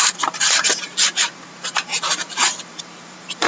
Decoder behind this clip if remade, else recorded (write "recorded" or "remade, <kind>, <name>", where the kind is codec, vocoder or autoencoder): remade, vocoder, BigVGAN v2